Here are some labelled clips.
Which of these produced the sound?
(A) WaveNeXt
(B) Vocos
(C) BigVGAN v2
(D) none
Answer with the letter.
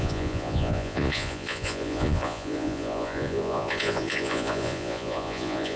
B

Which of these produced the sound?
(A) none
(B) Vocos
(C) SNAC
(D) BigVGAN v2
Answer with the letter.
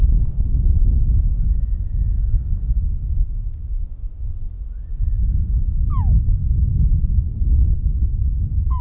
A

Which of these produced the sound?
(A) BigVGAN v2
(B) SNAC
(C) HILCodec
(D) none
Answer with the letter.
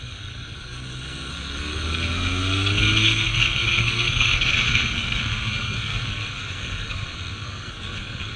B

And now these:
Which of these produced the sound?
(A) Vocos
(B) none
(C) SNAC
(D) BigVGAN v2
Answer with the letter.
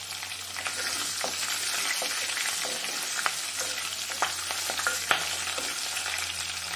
B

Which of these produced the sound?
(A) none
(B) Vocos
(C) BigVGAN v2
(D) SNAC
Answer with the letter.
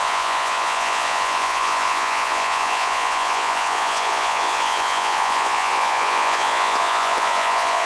B